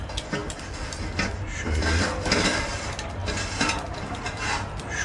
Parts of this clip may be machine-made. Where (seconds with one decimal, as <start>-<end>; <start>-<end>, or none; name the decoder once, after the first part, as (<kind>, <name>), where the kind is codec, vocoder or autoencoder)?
none